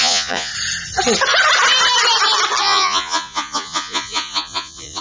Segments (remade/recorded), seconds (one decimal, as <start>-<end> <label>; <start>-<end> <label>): 0.0-0.5 remade; 0.5-2.6 recorded; 2.6-5.0 remade